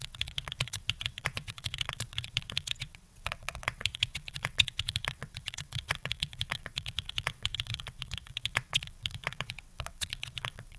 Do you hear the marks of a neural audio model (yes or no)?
yes